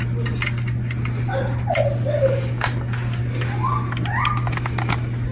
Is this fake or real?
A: real